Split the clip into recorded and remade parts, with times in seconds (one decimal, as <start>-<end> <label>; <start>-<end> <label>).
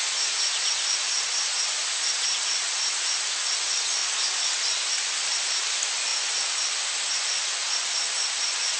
0.0-8.8 recorded